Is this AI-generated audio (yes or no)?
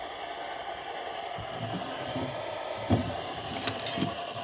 no